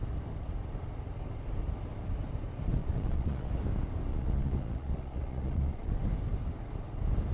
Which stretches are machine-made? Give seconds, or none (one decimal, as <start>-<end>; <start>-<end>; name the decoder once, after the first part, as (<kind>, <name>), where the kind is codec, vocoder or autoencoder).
2.8-3.5 (vocoder, Vocos); 4.1-6.0